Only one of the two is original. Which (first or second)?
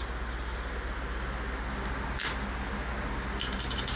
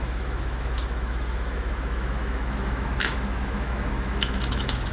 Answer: first